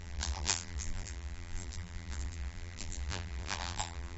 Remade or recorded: remade